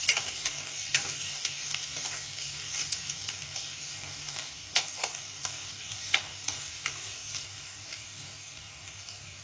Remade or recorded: remade